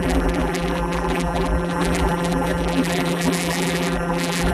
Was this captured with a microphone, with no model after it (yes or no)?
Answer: no